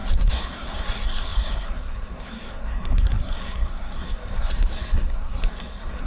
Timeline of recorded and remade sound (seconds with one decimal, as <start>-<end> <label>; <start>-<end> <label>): 0.0-6.1 remade